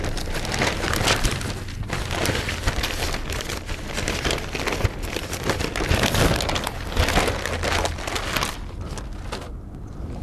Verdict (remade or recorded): recorded